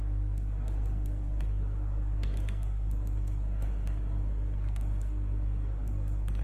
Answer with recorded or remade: remade